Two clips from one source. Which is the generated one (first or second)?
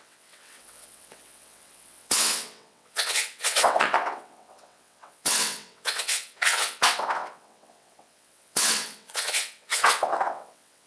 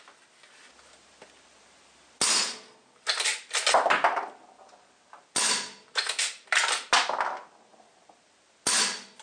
first